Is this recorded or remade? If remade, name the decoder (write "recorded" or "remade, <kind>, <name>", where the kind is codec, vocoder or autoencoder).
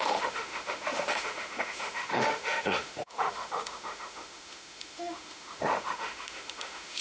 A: remade, autoencoder, DAC-VAE